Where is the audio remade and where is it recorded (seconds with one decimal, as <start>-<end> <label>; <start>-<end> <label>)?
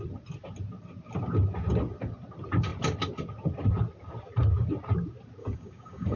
0.0-5.4 recorded; 5.4-6.2 remade